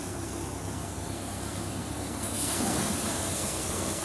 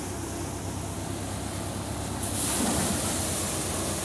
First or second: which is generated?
first